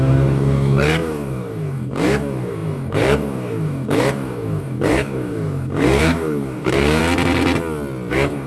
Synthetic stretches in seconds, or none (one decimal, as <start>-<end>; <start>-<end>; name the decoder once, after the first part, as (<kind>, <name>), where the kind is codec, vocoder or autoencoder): 0.0-7.0 (codec, DAC); 8.1-8.5